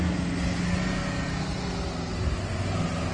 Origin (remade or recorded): recorded